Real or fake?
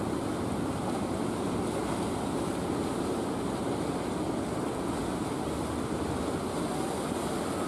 real